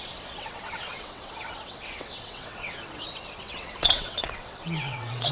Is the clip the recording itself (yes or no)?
no